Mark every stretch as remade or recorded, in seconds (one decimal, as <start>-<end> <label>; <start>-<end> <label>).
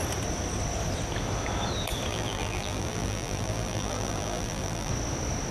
0.0-2.1 recorded; 2.1-4.9 remade; 4.9-5.5 recorded